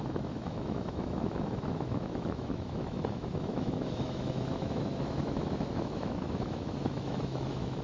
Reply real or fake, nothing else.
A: fake